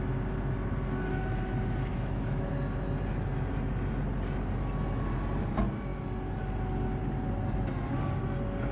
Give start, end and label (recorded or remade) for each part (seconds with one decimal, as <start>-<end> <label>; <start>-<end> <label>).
0.0-1.9 recorded; 1.9-2.5 remade; 2.5-8.7 recorded